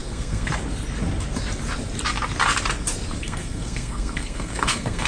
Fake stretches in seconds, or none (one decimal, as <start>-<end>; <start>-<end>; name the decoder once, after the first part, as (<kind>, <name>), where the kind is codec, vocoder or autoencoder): 0.0-0.5 (codec, SNAC); 3.2-5.1